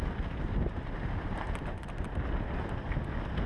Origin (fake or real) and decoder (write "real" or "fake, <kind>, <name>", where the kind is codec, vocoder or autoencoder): real